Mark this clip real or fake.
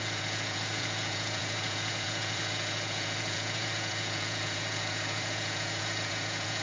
fake